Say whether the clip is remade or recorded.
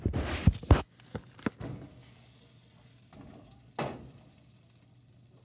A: recorded